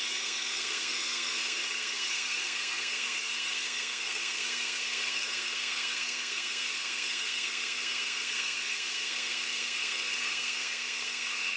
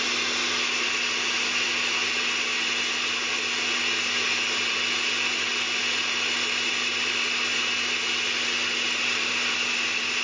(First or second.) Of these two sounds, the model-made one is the first